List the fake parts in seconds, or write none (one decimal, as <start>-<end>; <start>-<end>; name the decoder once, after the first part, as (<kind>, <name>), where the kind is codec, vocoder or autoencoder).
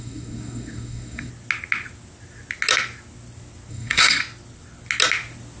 0.0-1.3 (codec, SNAC); 3.7-4.2